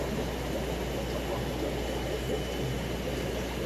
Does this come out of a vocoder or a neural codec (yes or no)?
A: no